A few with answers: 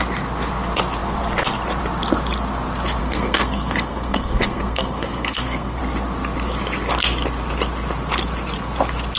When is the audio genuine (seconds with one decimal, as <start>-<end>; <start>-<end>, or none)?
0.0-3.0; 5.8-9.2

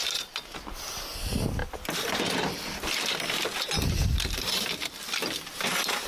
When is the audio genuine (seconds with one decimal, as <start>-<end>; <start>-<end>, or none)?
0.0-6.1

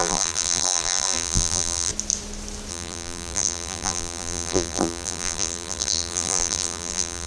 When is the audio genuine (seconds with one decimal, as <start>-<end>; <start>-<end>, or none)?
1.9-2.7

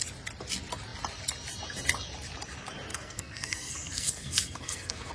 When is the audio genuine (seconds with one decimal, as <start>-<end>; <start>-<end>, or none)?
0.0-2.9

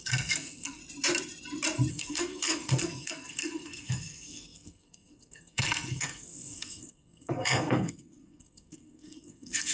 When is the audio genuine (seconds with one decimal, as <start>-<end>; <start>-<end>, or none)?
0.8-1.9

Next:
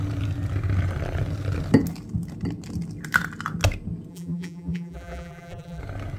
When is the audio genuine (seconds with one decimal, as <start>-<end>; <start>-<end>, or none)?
0.0-4.1; 5.8-6.2

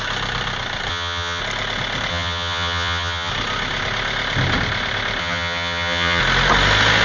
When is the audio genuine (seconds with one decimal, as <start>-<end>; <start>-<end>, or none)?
0.0-0.9; 1.4-2.1; 3.3-5.2; 6.2-7.0

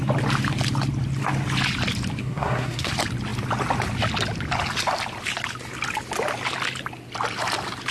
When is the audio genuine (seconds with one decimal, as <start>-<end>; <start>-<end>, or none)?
0.0-2.2; 2.9-7.9